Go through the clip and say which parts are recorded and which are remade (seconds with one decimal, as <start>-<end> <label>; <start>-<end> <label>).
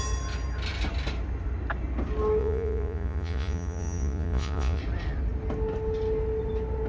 0.0-2.4 recorded; 2.4-4.8 remade; 4.8-6.9 recorded